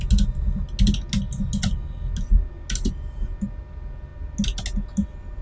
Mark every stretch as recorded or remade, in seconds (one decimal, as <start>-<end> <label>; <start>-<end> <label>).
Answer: 0.0-5.4 recorded